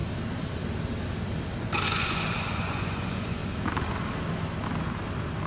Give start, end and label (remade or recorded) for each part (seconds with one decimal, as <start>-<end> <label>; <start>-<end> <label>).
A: 0.0-1.6 recorded; 1.6-3.4 remade; 3.4-5.5 recorded